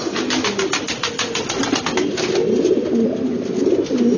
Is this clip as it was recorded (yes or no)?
yes